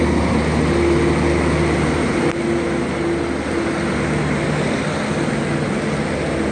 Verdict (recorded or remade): recorded